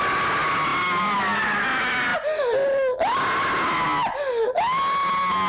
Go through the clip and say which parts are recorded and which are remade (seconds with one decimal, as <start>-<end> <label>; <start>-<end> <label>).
0.0-5.5 recorded